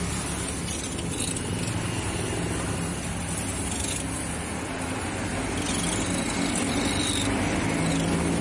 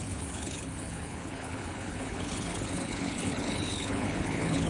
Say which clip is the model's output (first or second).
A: second